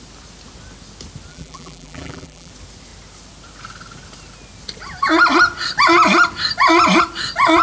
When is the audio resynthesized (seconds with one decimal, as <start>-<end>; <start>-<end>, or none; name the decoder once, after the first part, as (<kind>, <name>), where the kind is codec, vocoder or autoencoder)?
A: 1.3-2.5 (vocoder, BigVGAN v2)